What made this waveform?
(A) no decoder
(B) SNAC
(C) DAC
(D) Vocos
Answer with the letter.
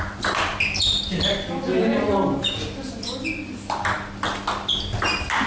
A